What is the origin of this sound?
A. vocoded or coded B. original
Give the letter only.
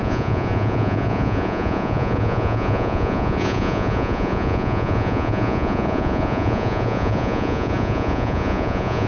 A